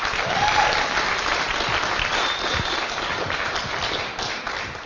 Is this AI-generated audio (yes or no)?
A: no